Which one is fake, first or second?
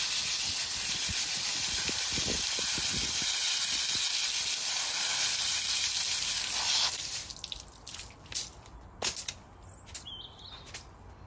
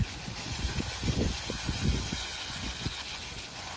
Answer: second